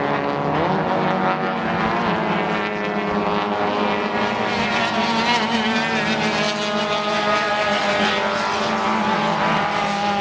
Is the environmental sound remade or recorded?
recorded